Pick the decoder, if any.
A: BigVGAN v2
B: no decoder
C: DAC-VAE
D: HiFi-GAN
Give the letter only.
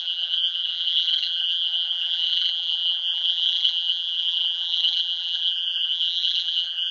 A